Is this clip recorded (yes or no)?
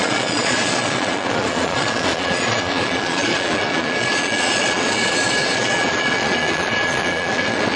no